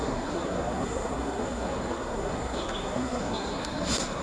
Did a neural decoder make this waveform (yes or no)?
yes